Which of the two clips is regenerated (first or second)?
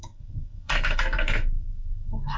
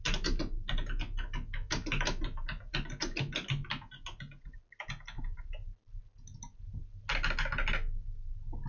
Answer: first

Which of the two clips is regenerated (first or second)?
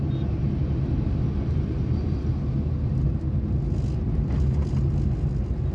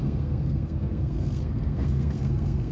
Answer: second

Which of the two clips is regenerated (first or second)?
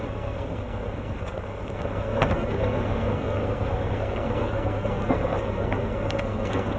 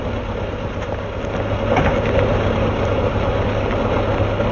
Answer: first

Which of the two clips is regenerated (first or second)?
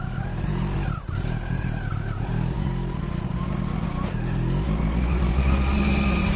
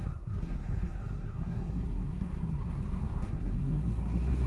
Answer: second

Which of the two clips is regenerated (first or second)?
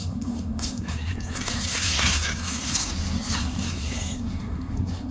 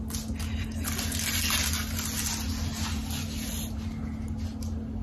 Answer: first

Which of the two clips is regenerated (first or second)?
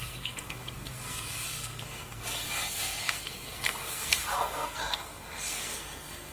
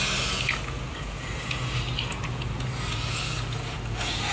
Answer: first